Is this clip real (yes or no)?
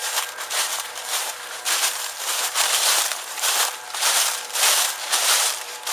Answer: no